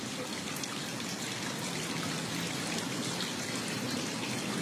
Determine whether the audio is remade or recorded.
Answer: remade